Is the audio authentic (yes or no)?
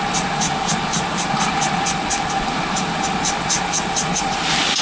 yes